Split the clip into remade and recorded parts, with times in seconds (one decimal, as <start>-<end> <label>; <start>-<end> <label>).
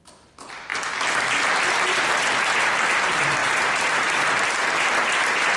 0.0-3.4 recorded; 3.4-4.5 remade; 4.5-5.6 recorded